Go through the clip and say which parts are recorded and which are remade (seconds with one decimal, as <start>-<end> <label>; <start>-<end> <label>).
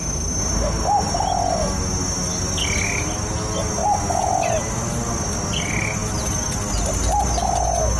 0.0-6.0 recorded; 6.0-6.7 remade; 6.7-8.0 recorded